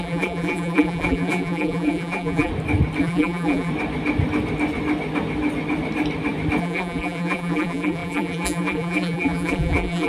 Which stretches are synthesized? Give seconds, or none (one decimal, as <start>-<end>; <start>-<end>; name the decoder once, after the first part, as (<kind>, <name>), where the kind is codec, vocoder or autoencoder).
0.0-2.5 (vocoder, BigVGAN v2); 3.0-3.7; 6.6-10.1